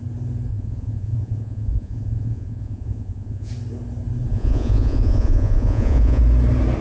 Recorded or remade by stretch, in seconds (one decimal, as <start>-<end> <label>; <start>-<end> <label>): 0.0-0.5 recorded; 0.5-3.5 remade; 3.5-4.3 recorded; 4.3-6.2 remade; 6.2-6.8 recorded

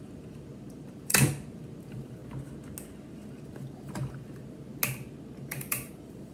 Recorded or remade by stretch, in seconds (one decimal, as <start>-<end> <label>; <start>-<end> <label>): 0.0-2.2 remade; 2.2-3.1 recorded; 3.1-4.8 remade; 4.8-5.4 recorded; 5.4-6.3 remade

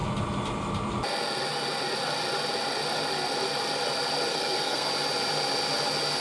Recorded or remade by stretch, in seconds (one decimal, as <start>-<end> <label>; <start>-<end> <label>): 0.0-4.3 recorded; 4.3-4.9 remade; 4.9-6.2 recorded

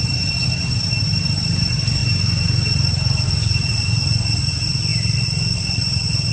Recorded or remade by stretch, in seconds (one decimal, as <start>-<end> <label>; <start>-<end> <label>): 0.0-6.3 recorded

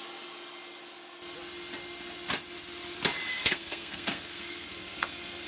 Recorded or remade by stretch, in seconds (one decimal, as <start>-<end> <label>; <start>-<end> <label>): 0.0-3.3 recorded; 3.3-5.5 remade

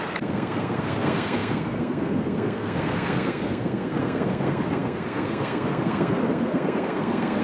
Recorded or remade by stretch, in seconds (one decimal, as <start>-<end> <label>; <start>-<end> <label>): 0.0-7.4 remade

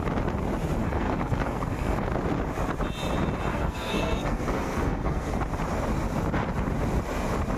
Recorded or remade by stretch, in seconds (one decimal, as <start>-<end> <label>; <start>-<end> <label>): 0.0-0.8 recorded; 0.8-2.1 remade; 2.1-3.5 recorded; 3.5-5.4 remade; 5.4-7.6 recorded

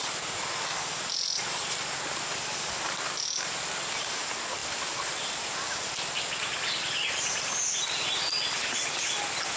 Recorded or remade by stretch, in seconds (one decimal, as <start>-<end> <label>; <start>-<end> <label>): 0.0-9.6 recorded